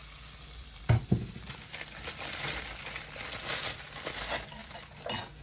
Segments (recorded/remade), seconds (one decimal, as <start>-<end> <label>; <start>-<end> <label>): 0.0-5.4 recorded